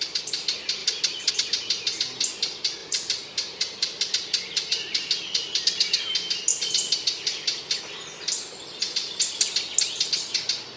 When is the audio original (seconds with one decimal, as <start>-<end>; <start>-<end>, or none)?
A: 0.0-0.8; 1.3-2.8; 6.1-6.5; 7.8-10.8